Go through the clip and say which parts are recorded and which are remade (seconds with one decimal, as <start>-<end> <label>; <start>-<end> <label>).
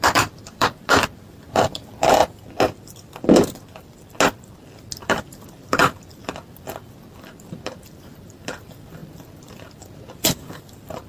0.0-2.2 remade; 2.2-5.0 recorded; 5.0-5.8 remade; 5.8-7.5 recorded; 7.5-11.1 remade